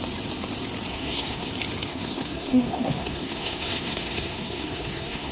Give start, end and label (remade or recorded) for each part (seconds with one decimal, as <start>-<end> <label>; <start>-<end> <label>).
0.0-0.9 recorded; 0.9-1.5 remade; 1.5-1.9 recorded; 1.9-5.3 remade